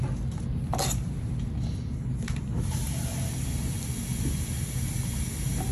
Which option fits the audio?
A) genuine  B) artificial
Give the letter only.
A